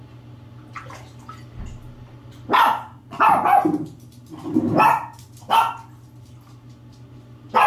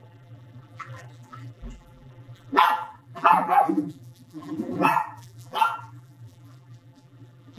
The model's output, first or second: second